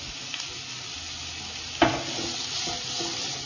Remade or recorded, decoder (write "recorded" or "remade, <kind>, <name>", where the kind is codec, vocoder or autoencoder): recorded